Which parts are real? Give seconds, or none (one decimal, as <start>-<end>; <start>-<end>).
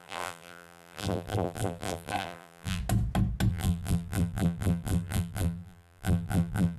2.8-3.5